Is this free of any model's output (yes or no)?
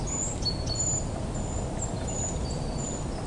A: yes